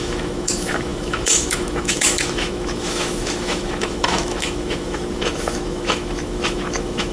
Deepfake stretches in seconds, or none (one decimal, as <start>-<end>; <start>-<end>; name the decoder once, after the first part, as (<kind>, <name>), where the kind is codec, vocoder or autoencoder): 0.0-7.1 (autoencoder, DAC-VAE)